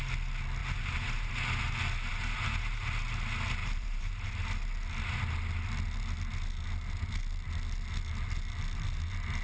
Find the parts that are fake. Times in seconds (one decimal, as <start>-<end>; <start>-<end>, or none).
0.6-1.3; 2.1-2.8; 3.6-4.3